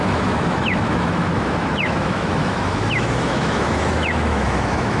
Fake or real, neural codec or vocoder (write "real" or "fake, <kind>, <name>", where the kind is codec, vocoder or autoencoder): fake, autoencoder, DAC-VAE